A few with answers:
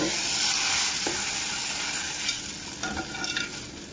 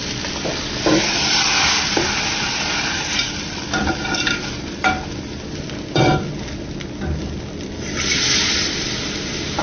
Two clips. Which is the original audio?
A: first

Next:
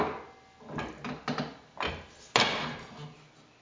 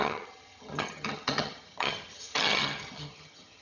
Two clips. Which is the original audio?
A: first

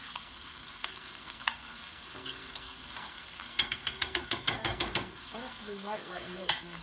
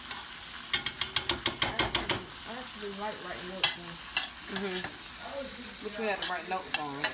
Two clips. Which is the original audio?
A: second